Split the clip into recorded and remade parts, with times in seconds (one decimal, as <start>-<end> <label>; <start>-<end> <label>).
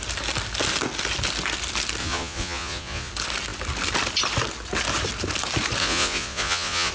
0.0-2.0 recorded; 2.0-3.1 remade; 3.1-5.8 recorded; 5.8-6.9 remade